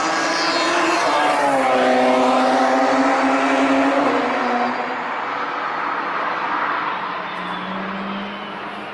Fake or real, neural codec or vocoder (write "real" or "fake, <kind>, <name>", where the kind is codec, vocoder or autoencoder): real